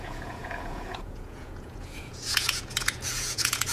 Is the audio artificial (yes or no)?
yes